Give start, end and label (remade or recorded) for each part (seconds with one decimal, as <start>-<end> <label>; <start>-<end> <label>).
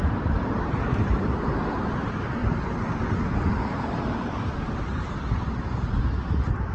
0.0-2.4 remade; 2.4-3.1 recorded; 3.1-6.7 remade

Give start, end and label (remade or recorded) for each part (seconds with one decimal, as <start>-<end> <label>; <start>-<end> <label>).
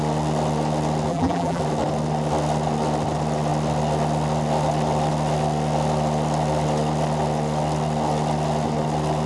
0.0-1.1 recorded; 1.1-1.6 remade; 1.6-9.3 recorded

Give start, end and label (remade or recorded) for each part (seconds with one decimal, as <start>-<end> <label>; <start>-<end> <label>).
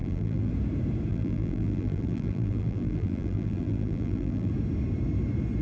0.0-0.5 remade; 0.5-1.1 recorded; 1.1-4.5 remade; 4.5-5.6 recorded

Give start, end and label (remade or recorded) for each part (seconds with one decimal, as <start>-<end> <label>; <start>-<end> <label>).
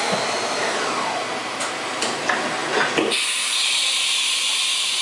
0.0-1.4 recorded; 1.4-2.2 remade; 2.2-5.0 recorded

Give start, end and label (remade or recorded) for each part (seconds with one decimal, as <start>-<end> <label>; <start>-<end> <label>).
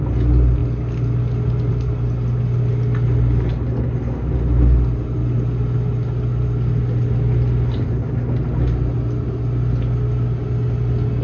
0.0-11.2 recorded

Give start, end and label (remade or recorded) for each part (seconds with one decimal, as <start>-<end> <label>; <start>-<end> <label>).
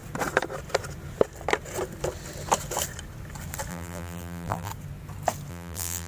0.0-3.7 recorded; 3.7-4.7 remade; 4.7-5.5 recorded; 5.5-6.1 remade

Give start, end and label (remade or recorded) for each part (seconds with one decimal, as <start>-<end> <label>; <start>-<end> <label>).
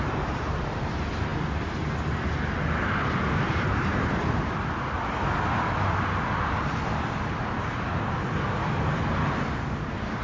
0.0-10.2 recorded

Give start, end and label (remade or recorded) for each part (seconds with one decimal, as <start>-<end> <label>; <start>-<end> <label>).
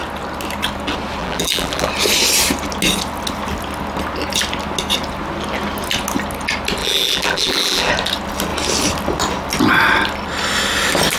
0.0-1.2 recorded; 1.2-1.9 remade; 1.9-6.8 recorded; 6.8-7.9 remade; 7.9-11.2 recorded